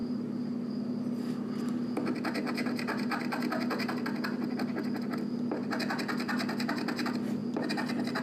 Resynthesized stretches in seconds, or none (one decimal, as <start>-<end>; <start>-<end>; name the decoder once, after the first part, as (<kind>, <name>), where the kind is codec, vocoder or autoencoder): 0.0-0.7 (vocoder, BigVGAN v2)